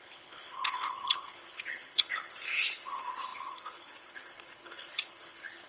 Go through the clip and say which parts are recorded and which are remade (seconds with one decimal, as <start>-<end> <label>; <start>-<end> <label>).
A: 0.0-5.7 remade